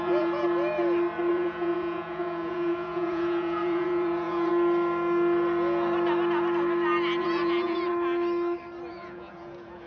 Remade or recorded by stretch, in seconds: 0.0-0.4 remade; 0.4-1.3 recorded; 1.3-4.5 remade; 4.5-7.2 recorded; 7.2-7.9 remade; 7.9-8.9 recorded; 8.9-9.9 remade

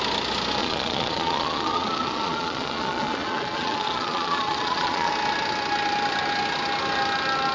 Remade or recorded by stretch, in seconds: 0.0-0.6 recorded; 0.6-5.1 remade; 5.1-7.5 recorded

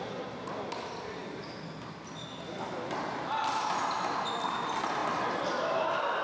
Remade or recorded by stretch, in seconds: 0.0-6.2 recorded

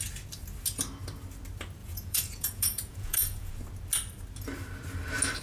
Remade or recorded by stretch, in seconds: 0.0-1.8 recorded; 1.8-3.5 remade; 3.5-5.4 recorded

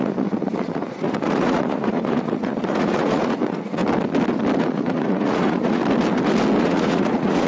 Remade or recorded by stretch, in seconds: 0.0-3.8 remade; 3.8-4.6 recorded; 4.6-5.8 remade; 5.8-6.6 recorded; 6.6-7.5 remade